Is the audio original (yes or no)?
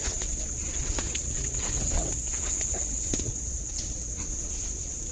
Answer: no